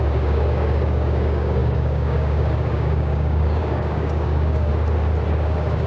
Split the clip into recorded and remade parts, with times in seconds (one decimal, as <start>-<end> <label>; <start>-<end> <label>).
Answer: 0.0-4.7 remade; 4.7-5.3 recorded; 5.3-5.9 remade